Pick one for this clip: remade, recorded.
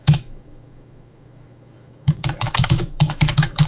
remade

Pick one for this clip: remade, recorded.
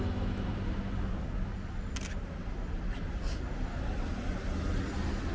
recorded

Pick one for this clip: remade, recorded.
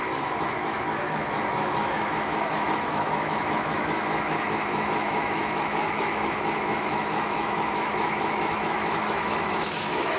remade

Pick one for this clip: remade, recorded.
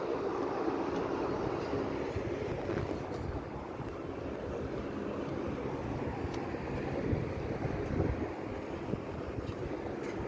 recorded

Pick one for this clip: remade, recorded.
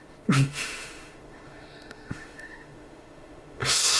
remade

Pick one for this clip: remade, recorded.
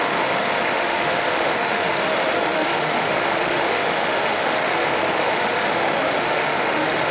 remade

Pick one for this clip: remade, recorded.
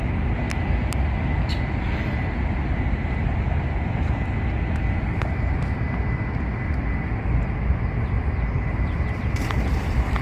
recorded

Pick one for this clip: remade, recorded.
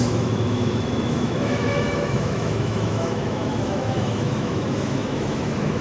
remade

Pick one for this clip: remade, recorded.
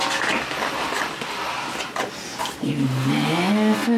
recorded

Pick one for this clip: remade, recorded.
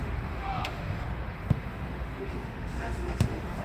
remade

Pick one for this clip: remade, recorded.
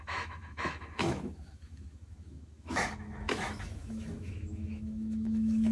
remade